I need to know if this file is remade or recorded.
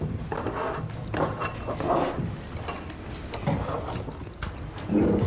recorded